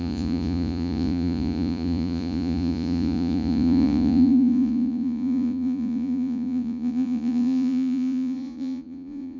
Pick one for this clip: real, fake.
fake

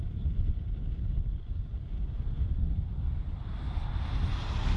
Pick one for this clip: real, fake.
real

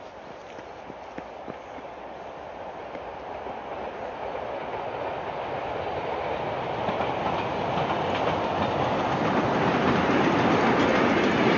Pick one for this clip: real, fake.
real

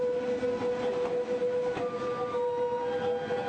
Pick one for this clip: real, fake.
real